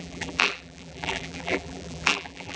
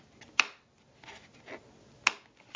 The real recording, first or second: second